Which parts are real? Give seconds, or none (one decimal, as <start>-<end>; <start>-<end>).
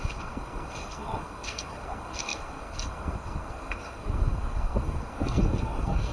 none